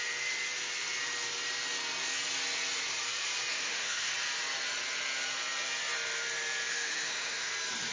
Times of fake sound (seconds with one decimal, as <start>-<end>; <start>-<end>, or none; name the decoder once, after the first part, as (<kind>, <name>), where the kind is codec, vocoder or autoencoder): 3.5-4.1 (autoencoder, DAC-VAE); 6.7-7.5

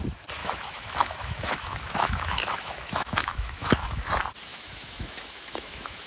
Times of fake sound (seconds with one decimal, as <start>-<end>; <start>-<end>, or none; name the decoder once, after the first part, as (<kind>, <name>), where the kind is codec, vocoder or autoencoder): 0.4-4.1 (autoencoder, DAC-VAE); 4.5-6.1

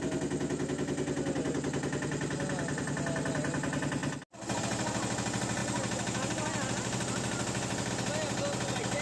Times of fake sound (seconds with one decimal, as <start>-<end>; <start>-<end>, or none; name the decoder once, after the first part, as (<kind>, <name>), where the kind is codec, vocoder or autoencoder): none